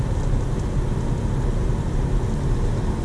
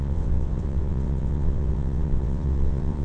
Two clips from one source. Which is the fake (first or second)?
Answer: second